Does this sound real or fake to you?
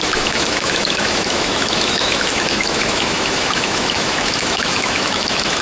fake